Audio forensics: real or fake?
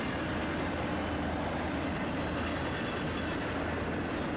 real